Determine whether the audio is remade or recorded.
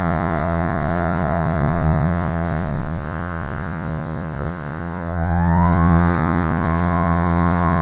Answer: remade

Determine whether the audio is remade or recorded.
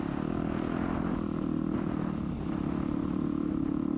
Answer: recorded